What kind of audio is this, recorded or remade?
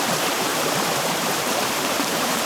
remade